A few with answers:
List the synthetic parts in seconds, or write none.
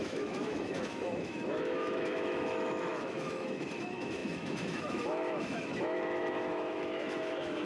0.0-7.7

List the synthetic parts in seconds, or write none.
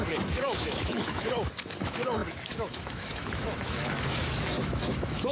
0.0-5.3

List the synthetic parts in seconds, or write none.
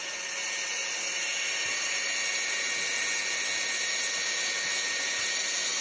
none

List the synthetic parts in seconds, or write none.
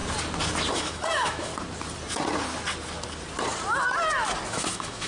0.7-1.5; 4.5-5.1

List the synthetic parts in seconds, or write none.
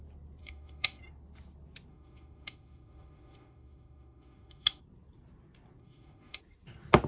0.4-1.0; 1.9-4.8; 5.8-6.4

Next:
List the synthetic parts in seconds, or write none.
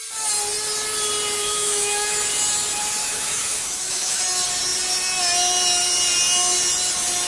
1.4-2.2; 3.0-4.2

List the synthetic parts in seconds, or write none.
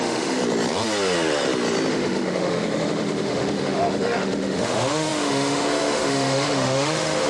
0.0-0.4; 1.9-7.3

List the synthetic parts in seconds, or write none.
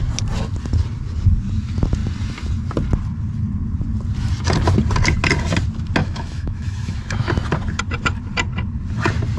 6.0-7.3